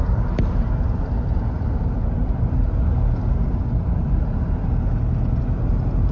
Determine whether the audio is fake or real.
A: real